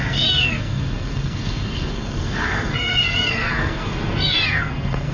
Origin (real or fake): fake